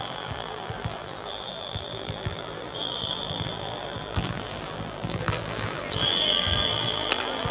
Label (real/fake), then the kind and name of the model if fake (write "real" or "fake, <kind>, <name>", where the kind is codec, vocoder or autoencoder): fake, vocoder, BigVGAN v2